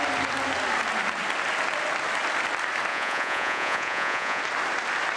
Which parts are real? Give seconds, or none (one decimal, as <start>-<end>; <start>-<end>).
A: 0.0-2.9; 4.4-5.2